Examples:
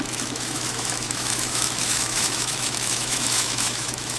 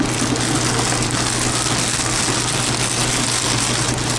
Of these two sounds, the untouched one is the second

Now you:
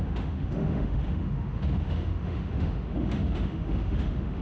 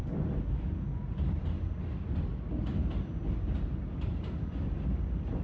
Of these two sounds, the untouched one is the second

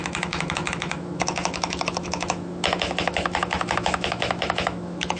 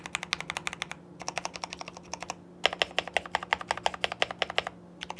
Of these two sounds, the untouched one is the second